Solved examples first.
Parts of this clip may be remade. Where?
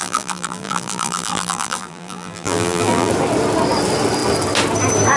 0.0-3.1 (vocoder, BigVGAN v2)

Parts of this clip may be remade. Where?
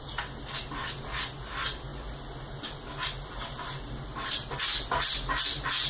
none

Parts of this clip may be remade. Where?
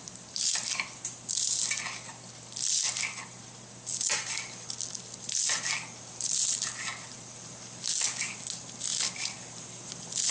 none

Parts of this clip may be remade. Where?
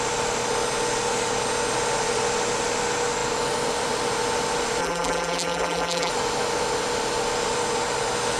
4.8-6.1 (vocoder, BigVGAN v2)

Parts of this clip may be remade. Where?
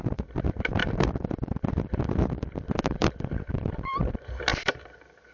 0.0-5.3 (vocoder, BigVGAN v2)